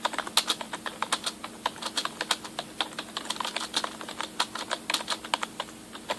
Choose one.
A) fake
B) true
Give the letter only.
B